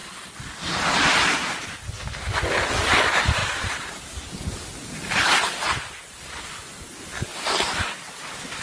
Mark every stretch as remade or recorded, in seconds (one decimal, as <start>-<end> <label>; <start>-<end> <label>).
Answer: 0.0-3.4 recorded; 3.4-4.1 remade; 4.1-7.3 recorded; 7.3-7.9 remade; 7.9-8.6 recorded